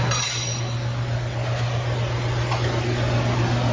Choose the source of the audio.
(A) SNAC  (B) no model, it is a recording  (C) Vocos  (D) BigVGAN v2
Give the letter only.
B